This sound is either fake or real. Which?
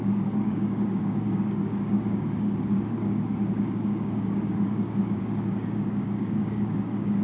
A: fake